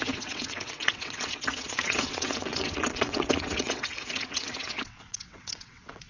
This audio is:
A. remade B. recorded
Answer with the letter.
A